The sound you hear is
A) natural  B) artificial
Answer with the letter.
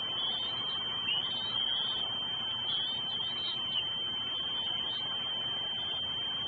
A